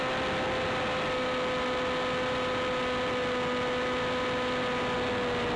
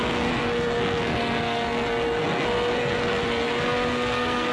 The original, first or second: first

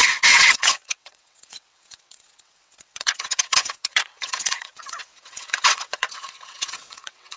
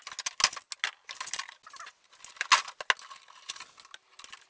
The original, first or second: second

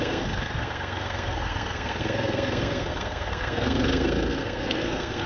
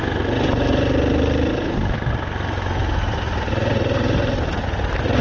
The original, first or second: second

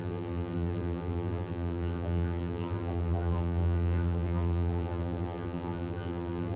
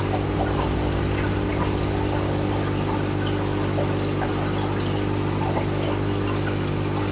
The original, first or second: second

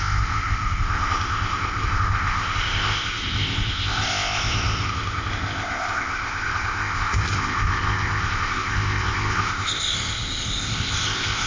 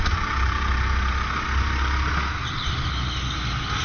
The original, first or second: second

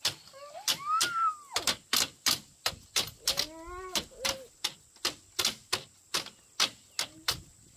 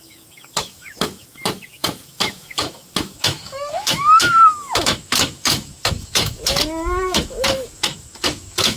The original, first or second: first